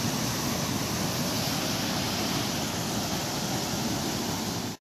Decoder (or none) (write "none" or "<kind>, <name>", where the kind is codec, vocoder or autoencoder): none